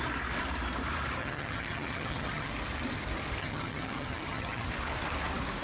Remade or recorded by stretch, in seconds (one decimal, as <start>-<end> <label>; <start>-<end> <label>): 0.0-1.2 recorded; 1.2-2.5 remade; 2.5-3.4 recorded; 3.4-4.7 remade; 4.7-5.6 recorded